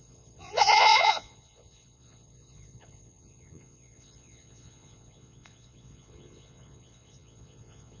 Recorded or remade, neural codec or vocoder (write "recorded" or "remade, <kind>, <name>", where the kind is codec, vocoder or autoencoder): remade, vocoder, Vocos